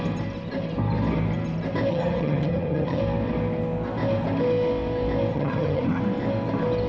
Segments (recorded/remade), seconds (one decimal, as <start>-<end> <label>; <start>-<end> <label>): 0.0-1.9 recorded; 1.9-3.0 remade; 3.0-5.3 recorded; 5.3-6.0 remade; 6.0-6.9 recorded